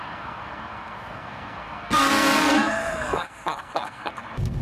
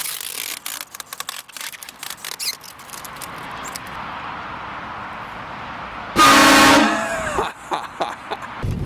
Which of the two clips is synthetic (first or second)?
first